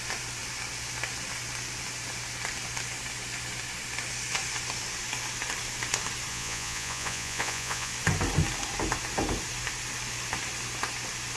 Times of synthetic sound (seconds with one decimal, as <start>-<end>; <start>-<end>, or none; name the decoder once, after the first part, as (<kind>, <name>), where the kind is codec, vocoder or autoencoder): 6.3-7.9 (vocoder, Vocos)